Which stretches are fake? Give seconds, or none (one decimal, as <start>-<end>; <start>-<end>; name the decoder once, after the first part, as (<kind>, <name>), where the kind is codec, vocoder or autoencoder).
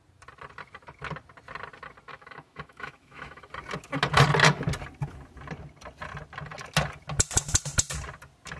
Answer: 2.1-3.5 (autoencoder, DAC-VAE)